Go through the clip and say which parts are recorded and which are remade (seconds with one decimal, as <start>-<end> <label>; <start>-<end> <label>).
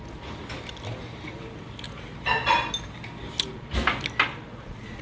0.0-4.5 recorded; 4.5-5.0 remade